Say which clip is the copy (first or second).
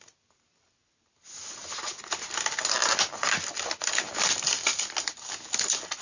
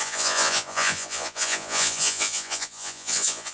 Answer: second